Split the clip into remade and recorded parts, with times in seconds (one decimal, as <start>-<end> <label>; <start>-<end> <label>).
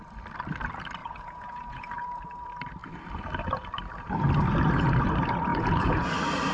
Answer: 0.0-1.0 recorded; 1.0-2.2 remade; 2.2-5.5 recorded; 5.5-6.1 remade; 6.1-6.5 recorded